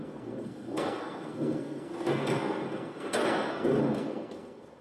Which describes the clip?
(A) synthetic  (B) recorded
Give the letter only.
A